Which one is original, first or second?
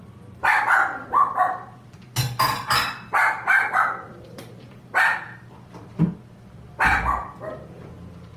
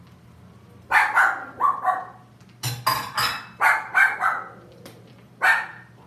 second